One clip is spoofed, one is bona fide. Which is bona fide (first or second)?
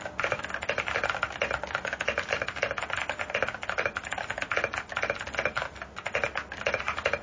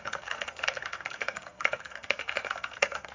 first